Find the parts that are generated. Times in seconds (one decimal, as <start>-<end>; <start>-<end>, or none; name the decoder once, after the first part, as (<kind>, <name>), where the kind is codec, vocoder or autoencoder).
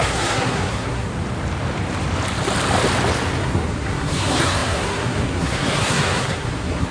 0.0-1.1 (codec, SNAC); 3.4-6.9